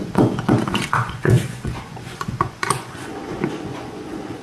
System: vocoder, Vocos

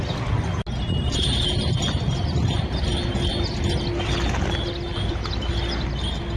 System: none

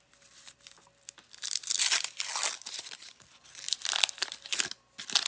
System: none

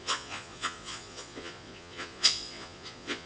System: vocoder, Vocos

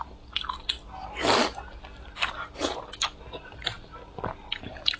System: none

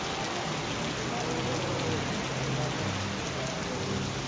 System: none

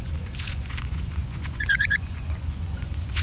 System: vocoder, Vocos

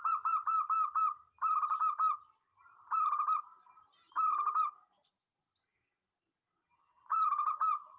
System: none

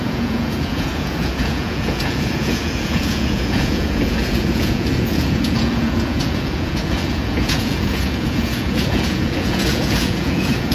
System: vocoder, Vocos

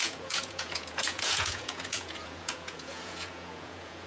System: vocoder, Vocos